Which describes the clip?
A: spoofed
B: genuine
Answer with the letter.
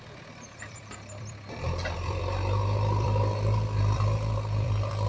A